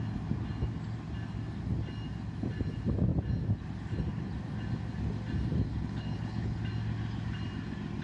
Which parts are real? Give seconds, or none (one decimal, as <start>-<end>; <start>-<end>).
0.0-5.7; 6.6-8.0